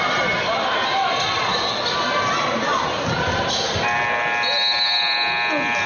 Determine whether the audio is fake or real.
real